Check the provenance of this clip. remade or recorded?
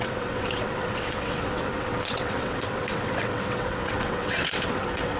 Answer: remade